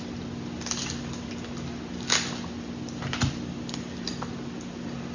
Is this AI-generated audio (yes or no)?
no